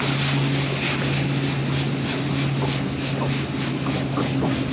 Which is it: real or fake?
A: real